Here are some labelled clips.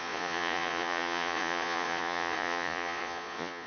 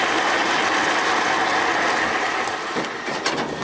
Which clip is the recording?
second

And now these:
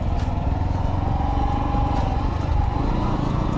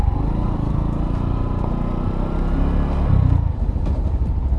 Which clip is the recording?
second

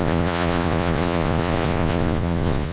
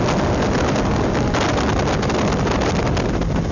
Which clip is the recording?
second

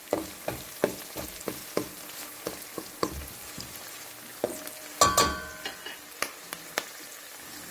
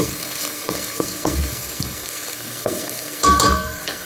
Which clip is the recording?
first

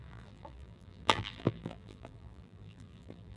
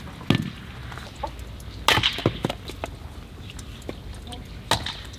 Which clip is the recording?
second